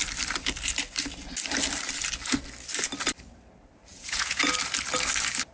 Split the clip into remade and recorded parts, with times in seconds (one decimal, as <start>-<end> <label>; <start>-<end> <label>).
0.0-3.9 recorded; 3.9-4.4 remade; 4.4-5.5 recorded